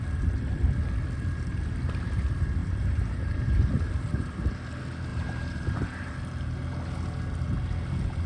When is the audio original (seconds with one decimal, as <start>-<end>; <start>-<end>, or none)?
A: 0.0-2.6; 4.5-5.1; 6.2-8.3